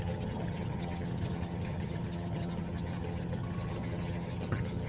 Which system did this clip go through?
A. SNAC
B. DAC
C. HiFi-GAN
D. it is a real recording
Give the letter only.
C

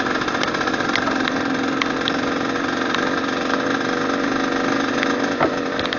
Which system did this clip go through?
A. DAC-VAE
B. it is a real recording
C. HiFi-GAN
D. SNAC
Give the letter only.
B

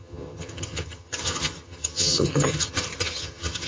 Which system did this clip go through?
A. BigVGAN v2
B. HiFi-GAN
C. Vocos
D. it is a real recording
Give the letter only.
B